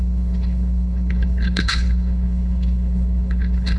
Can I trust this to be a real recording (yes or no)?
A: no